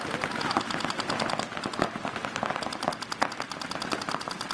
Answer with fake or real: real